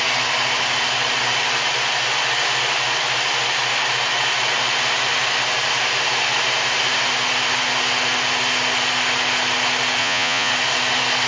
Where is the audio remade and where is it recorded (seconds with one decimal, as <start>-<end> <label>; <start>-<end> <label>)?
0.0-10.0 recorded; 10.0-10.5 remade; 10.5-11.3 recorded